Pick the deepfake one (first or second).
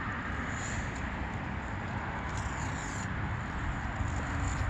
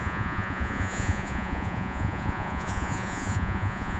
second